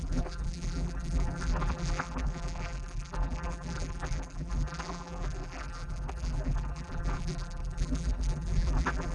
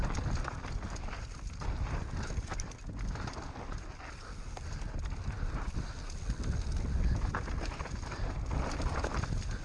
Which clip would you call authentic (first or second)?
second